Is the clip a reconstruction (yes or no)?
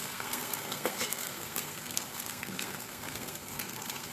yes